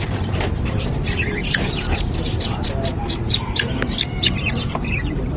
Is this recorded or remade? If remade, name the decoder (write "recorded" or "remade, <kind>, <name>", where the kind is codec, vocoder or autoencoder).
remade, vocoder, BigVGAN v2